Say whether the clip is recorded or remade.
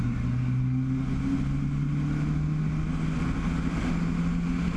recorded